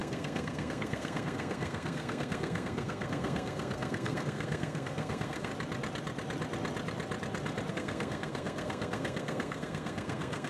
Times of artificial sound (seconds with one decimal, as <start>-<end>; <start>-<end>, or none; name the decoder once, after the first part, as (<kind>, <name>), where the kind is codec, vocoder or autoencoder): 0.0-5.5 (codec, SNAC); 7.7-10.5